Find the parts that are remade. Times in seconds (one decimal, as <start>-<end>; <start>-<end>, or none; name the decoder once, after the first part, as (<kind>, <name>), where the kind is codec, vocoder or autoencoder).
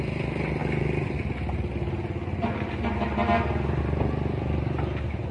none